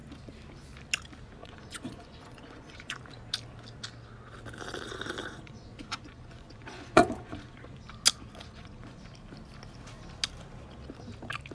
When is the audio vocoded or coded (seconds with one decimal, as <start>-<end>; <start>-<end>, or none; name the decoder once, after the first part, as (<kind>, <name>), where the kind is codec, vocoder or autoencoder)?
1.4-3.0 (vocoder, Vocos); 5.2-7.7; 8.4-9.0